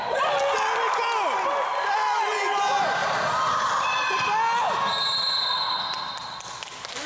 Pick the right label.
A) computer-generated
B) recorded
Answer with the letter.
B